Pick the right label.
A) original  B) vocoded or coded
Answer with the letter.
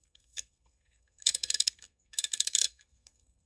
B